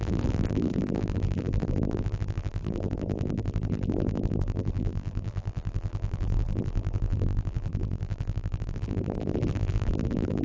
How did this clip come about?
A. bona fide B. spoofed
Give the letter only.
B